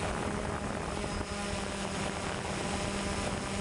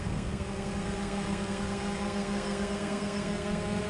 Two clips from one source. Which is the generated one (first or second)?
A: second